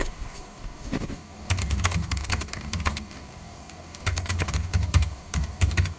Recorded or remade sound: remade